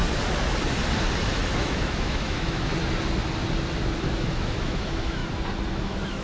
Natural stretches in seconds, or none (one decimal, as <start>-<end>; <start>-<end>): 0.0-1.6; 2.7-4.0; 5.2-5.7